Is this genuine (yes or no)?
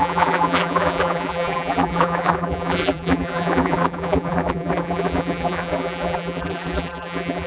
no